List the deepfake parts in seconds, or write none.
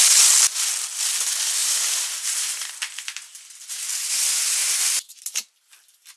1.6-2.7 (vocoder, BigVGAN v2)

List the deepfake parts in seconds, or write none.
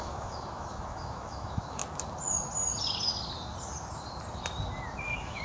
0.0-1.8 (autoencoder, DAC-VAE); 5.0-5.4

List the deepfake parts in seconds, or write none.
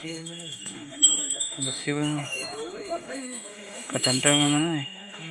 0.0-5.3 (autoencoder, DAC-VAE)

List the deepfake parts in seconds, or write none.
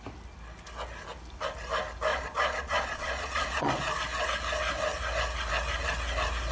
2.1-3.7 (vocoder, Vocos)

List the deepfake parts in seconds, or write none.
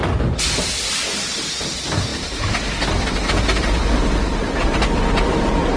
none